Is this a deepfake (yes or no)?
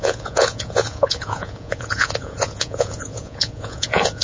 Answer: yes